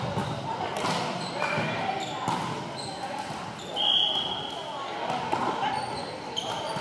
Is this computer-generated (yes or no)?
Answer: no